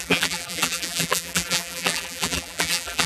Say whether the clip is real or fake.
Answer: fake